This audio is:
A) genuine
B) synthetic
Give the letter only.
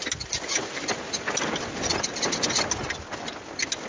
A